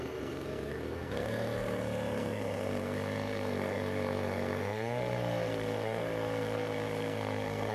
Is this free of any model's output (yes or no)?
no